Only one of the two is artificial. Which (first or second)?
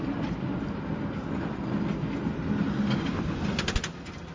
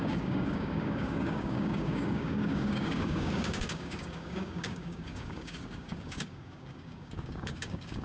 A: second